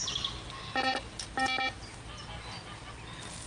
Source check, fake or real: real